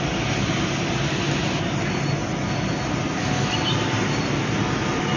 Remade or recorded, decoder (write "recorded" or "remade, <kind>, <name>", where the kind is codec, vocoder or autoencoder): recorded